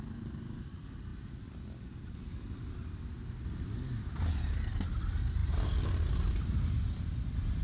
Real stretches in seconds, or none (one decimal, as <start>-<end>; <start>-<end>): 0.0-7.6